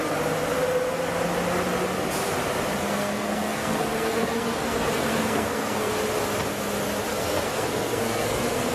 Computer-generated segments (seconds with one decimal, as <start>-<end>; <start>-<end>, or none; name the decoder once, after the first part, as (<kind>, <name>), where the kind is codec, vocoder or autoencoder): 2.8-5.9 (codec, SNAC); 7.1-8.7